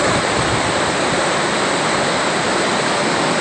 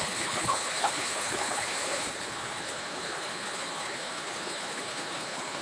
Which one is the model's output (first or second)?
second